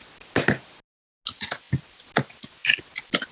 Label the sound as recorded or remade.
recorded